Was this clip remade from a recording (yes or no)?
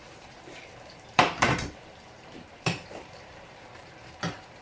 yes